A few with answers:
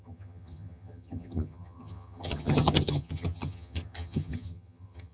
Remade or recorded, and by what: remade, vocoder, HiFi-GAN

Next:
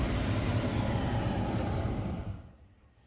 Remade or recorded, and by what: recorded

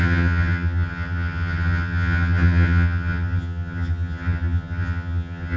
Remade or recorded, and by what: remade, vocoder, HiFi-GAN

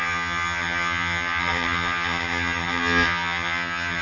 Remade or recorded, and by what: remade, vocoder, HiFi-GAN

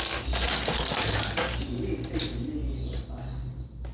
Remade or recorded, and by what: recorded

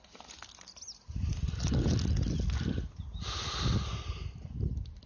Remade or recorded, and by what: recorded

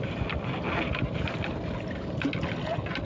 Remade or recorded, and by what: recorded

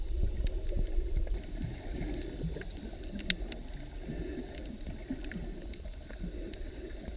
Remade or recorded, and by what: recorded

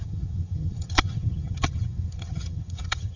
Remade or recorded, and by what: remade, vocoder, HiFi-GAN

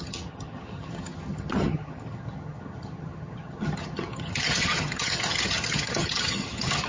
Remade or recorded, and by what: remade, vocoder, HiFi-GAN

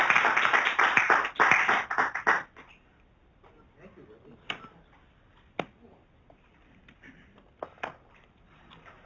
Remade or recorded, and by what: recorded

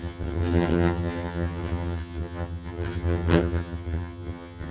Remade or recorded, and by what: remade, vocoder, HiFi-GAN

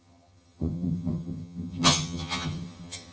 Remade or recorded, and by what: remade, vocoder, HiFi-GAN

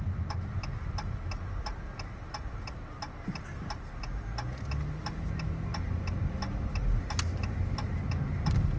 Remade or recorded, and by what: recorded